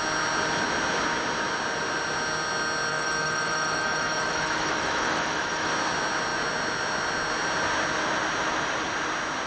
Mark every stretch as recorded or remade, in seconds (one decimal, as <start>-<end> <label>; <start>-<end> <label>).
0.0-2.9 recorded; 2.9-5.7 remade; 5.7-9.5 recorded